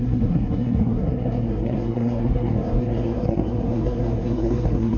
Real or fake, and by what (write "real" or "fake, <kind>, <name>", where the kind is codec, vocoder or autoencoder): fake, codec, SNAC